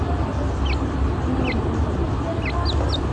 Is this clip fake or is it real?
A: real